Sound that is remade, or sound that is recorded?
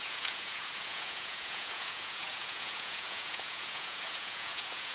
remade